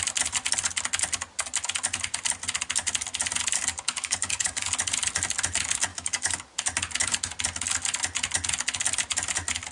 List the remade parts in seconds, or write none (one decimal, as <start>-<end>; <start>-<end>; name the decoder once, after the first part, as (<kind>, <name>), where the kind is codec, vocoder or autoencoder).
3.7-4.7 (codec, DAC); 5.9-6.5